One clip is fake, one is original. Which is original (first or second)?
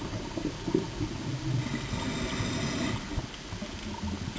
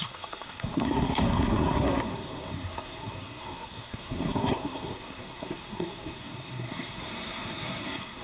first